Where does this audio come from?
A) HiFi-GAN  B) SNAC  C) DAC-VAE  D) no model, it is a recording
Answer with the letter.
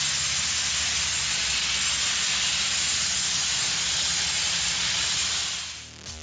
D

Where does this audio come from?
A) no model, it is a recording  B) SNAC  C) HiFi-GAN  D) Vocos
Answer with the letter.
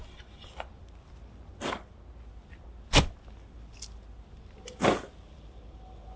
A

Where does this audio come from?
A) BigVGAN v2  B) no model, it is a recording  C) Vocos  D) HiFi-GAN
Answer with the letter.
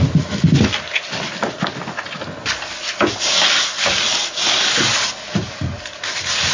B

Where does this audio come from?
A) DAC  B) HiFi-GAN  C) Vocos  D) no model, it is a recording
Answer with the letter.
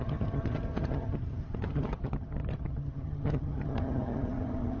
B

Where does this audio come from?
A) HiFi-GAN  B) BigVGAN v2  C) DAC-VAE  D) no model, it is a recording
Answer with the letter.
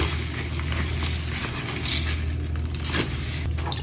D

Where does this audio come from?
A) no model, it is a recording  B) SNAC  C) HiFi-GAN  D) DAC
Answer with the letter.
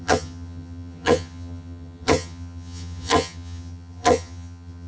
C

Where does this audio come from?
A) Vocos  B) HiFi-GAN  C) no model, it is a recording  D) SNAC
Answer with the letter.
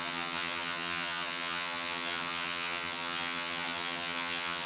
B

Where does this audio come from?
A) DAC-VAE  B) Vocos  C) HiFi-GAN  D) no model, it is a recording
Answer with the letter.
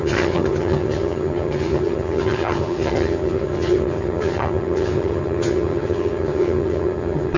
C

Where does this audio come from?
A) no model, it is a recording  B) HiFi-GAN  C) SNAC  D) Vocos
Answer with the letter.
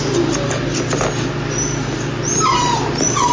A